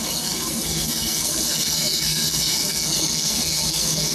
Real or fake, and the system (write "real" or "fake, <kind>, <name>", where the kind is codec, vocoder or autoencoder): fake, codec, SNAC